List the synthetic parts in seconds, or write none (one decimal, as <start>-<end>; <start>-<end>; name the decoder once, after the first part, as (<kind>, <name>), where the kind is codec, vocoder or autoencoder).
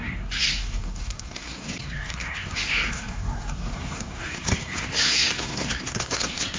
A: 0.0-6.6 (codec, SNAC)